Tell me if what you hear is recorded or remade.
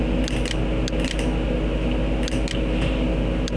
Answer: recorded